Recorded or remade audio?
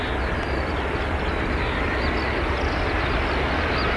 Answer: recorded